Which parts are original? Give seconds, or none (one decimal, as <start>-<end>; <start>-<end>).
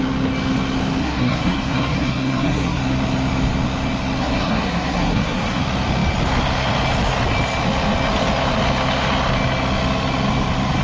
0.0-1.0; 2.8-4.2; 5.6-10.8